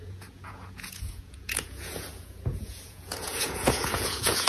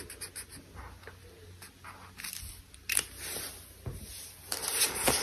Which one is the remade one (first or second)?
first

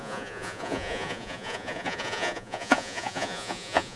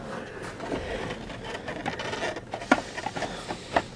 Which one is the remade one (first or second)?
first